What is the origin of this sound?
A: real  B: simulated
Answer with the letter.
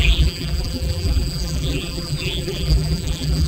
B